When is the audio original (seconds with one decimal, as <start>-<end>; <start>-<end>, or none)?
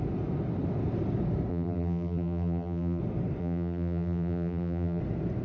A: 0.0-1.5; 3.0-3.4; 5.0-5.4